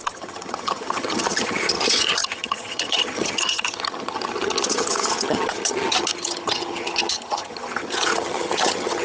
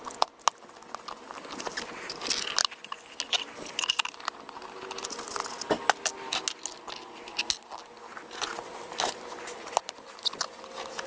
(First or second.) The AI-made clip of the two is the first